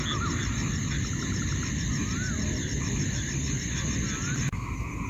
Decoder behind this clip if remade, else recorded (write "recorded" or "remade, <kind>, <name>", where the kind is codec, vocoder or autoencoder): recorded